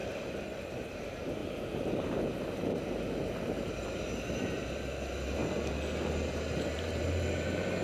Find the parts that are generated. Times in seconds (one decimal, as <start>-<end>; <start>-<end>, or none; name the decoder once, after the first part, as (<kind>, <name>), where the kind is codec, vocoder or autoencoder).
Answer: 0.7-5.4 (vocoder, BigVGAN v2); 6.3-7.8